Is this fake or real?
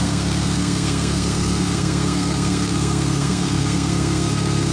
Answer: fake